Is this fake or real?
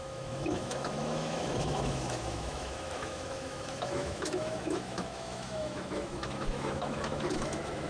fake